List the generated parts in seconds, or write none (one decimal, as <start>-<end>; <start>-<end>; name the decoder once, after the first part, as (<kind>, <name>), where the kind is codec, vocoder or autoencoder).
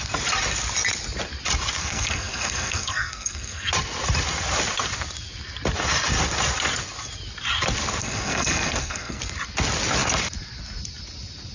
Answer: 1.8-3.7 (codec, SNAC); 8.0-9.2